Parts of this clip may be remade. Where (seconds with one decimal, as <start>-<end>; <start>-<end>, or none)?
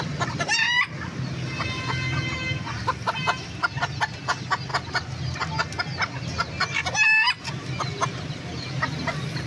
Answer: none